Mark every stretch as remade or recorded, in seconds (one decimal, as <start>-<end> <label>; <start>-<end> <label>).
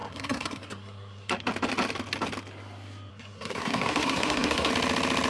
0.0-1.3 remade; 1.3-3.1 recorded; 3.1-4.7 remade; 4.7-5.3 recorded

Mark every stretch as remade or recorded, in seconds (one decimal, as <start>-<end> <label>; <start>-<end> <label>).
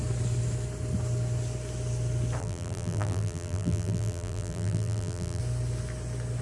0.0-2.4 recorded; 2.4-5.4 remade; 5.4-6.4 recorded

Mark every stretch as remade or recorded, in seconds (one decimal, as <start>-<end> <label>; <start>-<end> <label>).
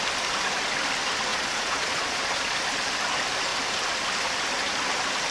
0.0-1.3 recorded; 1.3-2.5 remade; 2.5-5.3 recorded